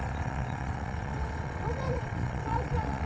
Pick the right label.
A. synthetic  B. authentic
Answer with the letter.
A